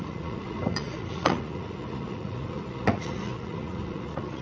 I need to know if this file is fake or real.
fake